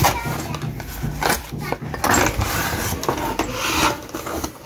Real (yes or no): yes